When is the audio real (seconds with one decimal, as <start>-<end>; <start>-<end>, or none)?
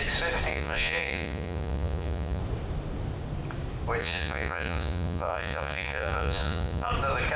0.0-0.5; 2.4-4.0; 6.9-7.4